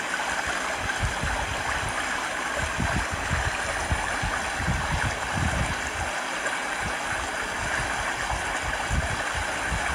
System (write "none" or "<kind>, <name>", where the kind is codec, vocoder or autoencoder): none